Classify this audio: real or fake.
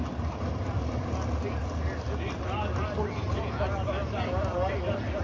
real